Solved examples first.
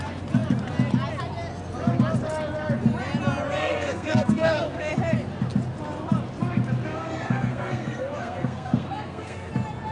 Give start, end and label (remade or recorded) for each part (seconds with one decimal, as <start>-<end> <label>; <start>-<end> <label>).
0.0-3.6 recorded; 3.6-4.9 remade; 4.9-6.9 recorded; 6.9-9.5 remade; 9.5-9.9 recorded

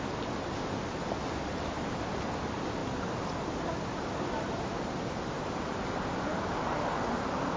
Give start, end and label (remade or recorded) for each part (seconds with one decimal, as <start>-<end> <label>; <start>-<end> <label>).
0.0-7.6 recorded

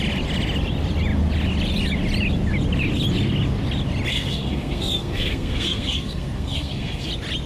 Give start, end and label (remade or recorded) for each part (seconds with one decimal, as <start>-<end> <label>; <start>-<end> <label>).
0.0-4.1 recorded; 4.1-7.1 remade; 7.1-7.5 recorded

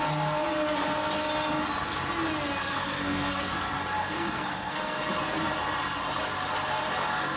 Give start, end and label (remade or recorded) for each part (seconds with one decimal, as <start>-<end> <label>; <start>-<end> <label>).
0.0-2.6 recorded; 2.6-3.4 remade; 3.4-4.0 recorded; 4.0-5.0 remade; 5.0-7.4 recorded

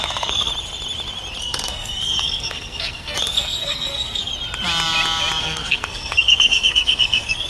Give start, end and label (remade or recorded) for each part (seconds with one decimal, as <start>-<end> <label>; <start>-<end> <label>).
0.0-0.5 remade; 0.5-1.4 recorded; 1.4-4.3 remade; 4.3-5.4 recorded; 5.4-7.5 remade

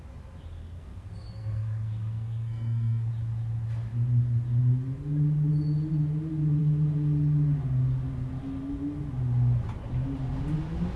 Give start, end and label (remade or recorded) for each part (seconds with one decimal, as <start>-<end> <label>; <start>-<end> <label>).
0.0-0.6 recorded; 0.6-3.1 remade; 3.1-11.0 recorded

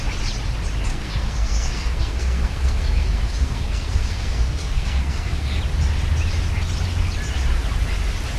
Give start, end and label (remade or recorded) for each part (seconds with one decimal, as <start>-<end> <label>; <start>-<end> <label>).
0.0-0.9 recorded; 0.9-5.6 remade; 5.6-8.4 recorded